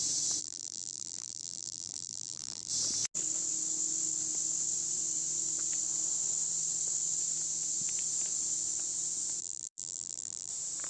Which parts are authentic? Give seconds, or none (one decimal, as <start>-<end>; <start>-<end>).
0.0-0.4; 2.7-9.4; 10.5-10.9